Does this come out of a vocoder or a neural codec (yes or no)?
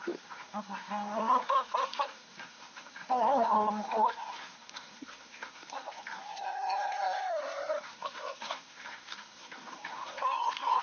yes